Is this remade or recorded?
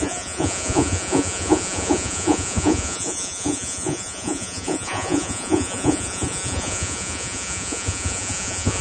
remade